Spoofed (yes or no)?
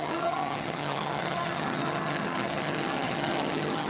yes